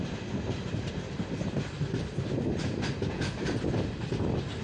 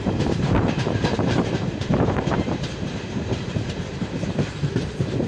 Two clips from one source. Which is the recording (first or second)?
first